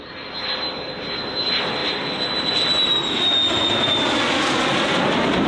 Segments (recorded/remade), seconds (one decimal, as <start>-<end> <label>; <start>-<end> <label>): 0.0-5.5 recorded